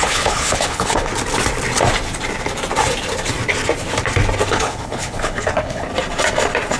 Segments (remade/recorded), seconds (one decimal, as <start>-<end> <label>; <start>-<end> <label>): 0.0-1.1 remade; 1.1-4.5 recorded; 4.5-5.9 remade; 5.9-6.8 recorded